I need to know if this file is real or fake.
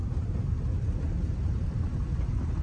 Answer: real